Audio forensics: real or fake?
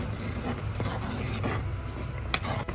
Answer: real